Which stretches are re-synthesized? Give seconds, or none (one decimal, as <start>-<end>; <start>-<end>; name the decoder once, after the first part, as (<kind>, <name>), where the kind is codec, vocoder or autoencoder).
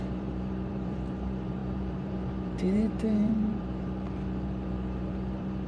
0.0-5.7 (vocoder, BigVGAN v2)